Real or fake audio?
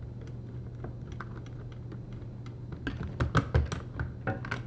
real